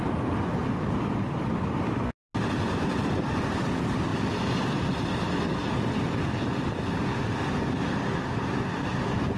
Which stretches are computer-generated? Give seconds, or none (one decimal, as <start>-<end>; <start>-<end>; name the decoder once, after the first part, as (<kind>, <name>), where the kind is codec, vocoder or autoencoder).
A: 0.6-1.9 (vocoder, BigVGAN v2)